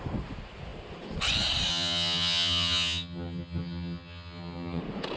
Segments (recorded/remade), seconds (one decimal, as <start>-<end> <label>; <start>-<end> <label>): 0.0-1.7 recorded; 1.7-4.8 remade; 4.8-5.2 recorded